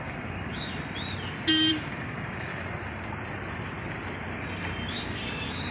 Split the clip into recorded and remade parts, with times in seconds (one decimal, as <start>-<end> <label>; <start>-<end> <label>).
0.0-0.7 remade; 0.7-1.7 recorded; 1.7-2.5 remade; 2.5-4.9 recorded; 4.9-5.7 remade

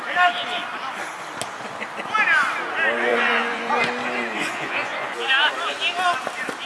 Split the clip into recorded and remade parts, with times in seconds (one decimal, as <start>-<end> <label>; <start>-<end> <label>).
0.0-3.1 recorded; 3.1-3.7 remade; 3.7-4.4 recorded; 4.4-5.2 remade; 5.2-6.7 recorded

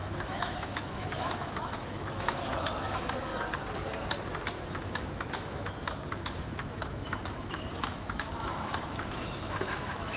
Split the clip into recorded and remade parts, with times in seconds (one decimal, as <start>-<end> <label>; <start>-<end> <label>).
0.0-3.3 remade; 3.3-4.7 recorded; 4.7-10.2 remade

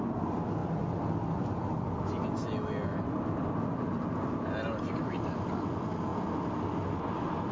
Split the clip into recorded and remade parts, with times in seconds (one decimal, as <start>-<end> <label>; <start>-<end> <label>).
0.0-7.5 recorded

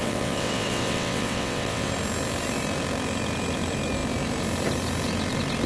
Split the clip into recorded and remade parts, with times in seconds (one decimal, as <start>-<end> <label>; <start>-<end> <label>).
0.0-1.9 remade; 1.9-5.7 recorded